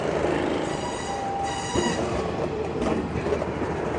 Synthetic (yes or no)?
no